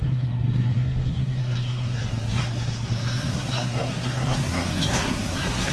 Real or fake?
fake